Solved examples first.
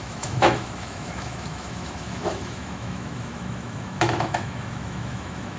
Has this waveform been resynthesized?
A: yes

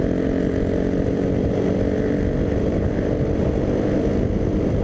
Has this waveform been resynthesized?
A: no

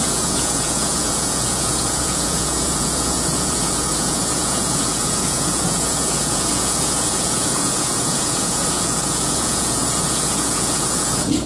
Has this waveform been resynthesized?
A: yes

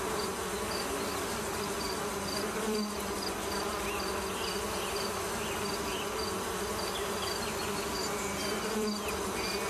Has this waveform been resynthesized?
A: no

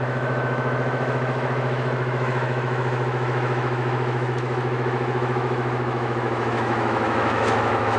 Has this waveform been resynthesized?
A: yes